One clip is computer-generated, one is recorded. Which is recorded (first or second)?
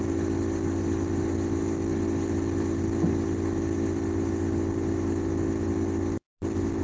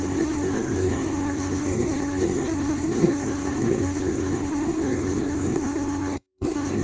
first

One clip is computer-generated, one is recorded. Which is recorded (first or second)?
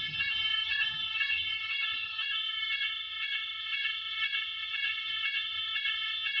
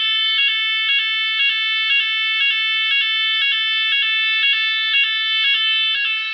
second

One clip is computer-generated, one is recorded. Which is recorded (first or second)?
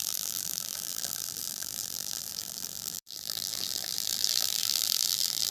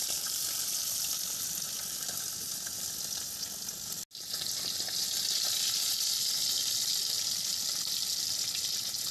second